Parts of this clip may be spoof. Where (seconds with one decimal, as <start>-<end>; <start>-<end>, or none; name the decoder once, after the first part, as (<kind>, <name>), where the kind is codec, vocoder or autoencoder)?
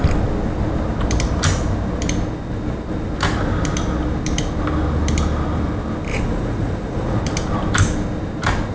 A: 6.1-7.2 (vocoder, Vocos)